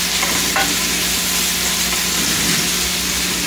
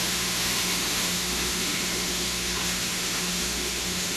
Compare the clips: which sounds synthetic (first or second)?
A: second